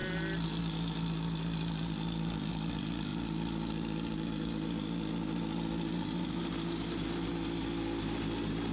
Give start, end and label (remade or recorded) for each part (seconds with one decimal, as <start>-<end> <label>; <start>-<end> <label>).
0.0-8.7 recorded